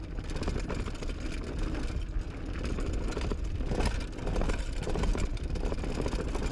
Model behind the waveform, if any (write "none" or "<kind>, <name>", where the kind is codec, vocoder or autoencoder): none